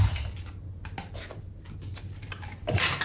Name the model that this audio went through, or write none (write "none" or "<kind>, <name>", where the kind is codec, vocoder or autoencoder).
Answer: none